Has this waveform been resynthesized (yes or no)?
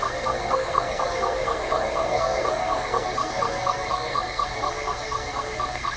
yes